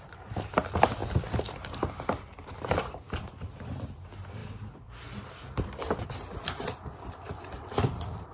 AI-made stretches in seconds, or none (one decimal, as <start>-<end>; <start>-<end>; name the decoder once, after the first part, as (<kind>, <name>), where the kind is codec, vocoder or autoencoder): 0.0-8.3 (vocoder, BigVGAN v2)

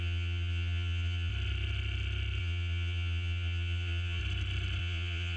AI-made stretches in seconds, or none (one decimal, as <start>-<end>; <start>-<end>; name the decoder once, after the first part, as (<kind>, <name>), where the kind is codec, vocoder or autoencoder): 0.0-1.3 (vocoder, Vocos); 2.4-4.2; 4.8-5.4

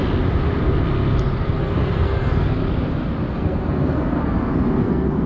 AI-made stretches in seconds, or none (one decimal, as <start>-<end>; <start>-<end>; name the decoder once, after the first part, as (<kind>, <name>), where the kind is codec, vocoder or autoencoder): 1.4-2.6 (codec, SNAC); 3.3-5.3

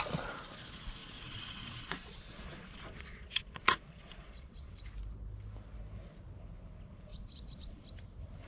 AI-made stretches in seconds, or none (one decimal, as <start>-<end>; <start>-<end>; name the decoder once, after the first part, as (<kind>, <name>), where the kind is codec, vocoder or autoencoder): 1.0-4.7 (vocoder, Vocos); 7.1-7.8

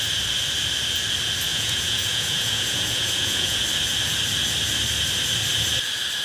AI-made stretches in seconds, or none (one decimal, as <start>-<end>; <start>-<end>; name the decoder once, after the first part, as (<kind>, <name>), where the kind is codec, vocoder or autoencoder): 1.5-3.6 (vocoder, Vocos)